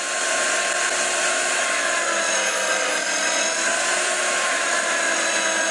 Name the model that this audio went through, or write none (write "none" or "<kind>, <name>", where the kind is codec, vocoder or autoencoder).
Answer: none